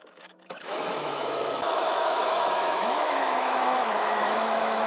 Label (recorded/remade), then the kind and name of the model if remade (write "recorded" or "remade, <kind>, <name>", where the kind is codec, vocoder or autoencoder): remade, autoencoder, DAC-VAE